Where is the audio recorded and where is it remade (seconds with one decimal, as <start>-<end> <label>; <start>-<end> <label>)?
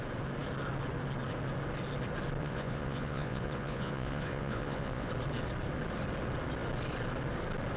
0.0-2.4 recorded; 2.4-5.1 remade; 5.1-7.8 recorded